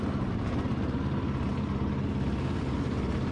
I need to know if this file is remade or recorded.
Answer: recorded